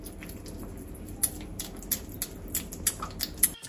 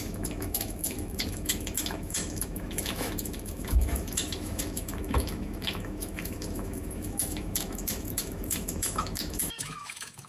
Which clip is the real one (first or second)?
first